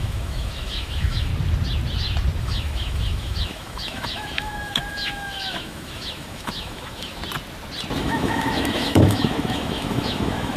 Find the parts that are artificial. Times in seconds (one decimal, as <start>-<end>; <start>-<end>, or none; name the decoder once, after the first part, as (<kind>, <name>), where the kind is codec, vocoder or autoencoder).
0.0-1.3 (autoencoder, DAC-VAE); 2.4-7.2; 8.0-10.6